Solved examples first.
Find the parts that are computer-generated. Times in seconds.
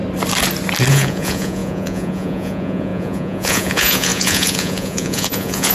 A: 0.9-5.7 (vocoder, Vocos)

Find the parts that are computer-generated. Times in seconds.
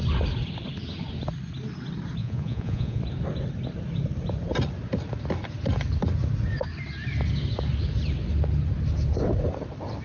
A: 2.2-3.0 (vocoder, Vocos)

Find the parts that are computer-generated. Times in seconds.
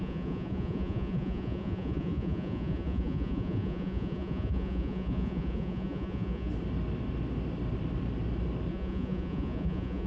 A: 0.0-6.5 (vocoder, Vocos); 8.7-10.1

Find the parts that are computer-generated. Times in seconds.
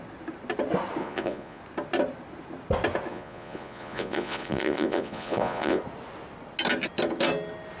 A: 1.0-1.6 (vocoder, Vocos); 3.1-5.8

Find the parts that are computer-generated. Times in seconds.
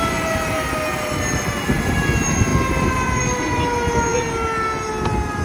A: none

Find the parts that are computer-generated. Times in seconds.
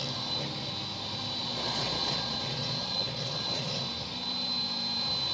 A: 1.4-3.8 (vocoder, Vocos)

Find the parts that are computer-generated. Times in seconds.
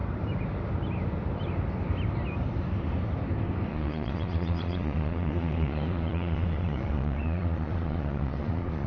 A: 3.7-8.9 (vocoder, Vocos)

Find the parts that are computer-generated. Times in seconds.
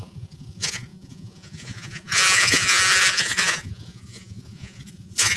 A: 0.0-5.4 (vocoder, Vocos)